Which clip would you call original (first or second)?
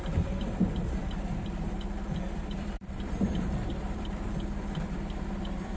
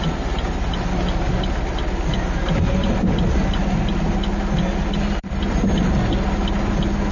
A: second